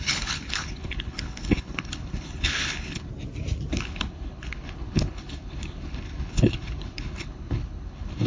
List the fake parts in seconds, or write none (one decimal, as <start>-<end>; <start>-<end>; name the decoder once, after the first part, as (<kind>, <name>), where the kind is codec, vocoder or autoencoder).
0.0-3.1 (codec, HILCodec); 3.7-8.3